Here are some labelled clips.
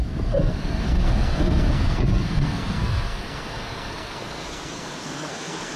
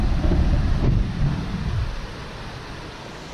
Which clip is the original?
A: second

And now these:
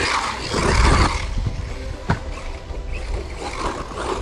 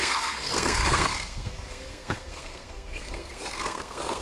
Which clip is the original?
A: first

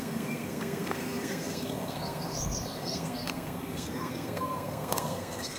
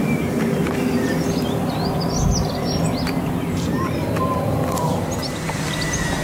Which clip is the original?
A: second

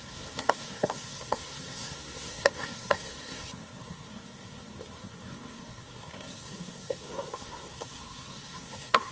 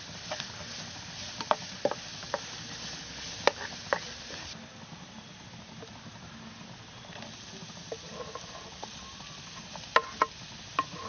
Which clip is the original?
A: second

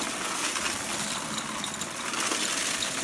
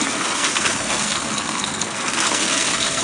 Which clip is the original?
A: first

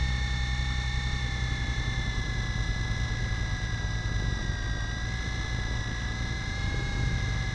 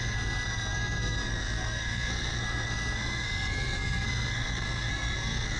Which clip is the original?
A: first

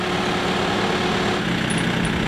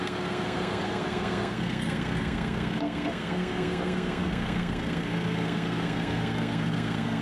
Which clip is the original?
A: first